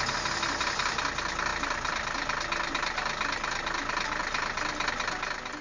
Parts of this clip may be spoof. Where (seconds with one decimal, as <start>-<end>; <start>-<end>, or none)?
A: none

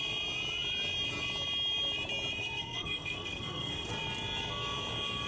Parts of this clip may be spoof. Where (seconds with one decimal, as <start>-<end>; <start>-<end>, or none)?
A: 2.4-3.9

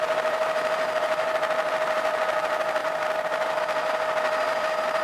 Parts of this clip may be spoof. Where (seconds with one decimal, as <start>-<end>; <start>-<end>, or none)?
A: 0.0-5.0

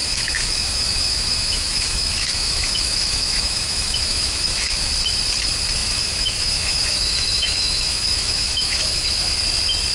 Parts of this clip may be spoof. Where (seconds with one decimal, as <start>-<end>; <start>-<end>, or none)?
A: 0.0-4.9; 5.8-9.3

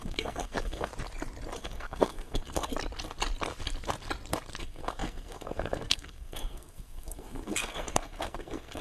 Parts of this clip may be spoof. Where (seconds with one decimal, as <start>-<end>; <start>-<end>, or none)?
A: 0.0-0.9; 1.6-2.7; 4.6-8.8